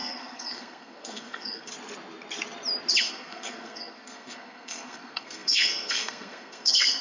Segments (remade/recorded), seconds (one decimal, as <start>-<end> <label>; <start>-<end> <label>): 0.0-1.7 remade; 1.7-3.0 recorded; 3.0-7.0 remade